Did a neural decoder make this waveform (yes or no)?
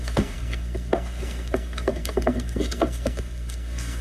yes